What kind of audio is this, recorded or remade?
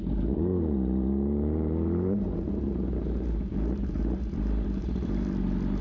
remade